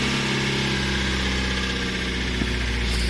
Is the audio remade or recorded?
recorded